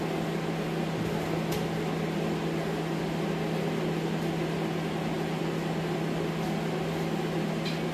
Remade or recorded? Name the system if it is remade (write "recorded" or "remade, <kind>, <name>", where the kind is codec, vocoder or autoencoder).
recorded